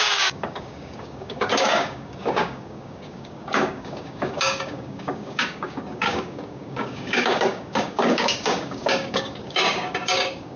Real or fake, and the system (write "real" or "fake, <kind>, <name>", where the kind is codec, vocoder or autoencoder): fake, codec, DAC